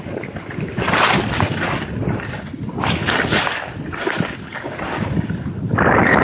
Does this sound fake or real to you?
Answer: real